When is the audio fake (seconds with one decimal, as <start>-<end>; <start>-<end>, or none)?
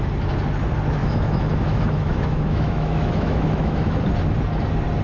1.0-4.0